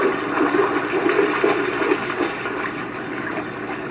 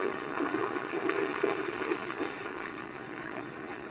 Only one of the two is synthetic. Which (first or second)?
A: second